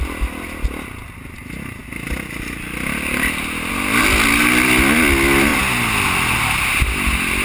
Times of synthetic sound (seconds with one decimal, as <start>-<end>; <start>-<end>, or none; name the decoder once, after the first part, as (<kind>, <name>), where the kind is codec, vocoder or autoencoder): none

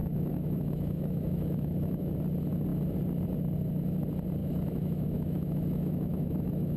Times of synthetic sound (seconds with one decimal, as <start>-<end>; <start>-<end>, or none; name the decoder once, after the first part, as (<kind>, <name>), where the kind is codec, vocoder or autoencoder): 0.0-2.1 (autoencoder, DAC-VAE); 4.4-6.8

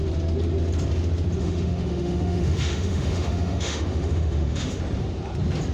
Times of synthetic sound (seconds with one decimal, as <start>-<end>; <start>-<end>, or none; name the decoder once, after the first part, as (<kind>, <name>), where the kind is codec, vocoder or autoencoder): 1.4-4.8 (autoencoder, DAC-VAE)

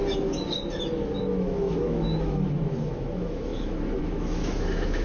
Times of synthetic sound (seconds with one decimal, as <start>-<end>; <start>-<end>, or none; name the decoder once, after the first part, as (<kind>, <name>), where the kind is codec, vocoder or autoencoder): 1.2-5.0 (autoencoder, DAC-VAE)

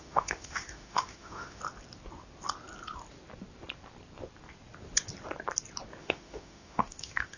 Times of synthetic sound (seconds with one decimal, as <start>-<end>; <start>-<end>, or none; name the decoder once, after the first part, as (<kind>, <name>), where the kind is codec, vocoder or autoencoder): 0.0-1.6 (autoencoder, DAC-VAE); 6.0-7.4